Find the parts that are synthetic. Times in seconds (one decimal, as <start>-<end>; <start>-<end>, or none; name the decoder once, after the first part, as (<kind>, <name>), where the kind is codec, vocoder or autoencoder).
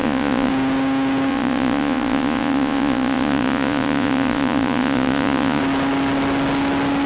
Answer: 0.0-0.5 (vocoder, Vocos); 1.3-5.6